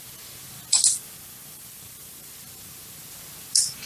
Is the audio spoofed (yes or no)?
no